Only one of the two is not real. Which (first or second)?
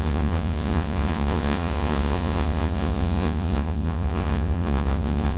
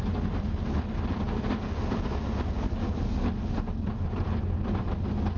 first